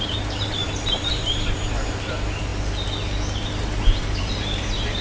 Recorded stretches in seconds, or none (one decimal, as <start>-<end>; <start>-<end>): 2.5-3.8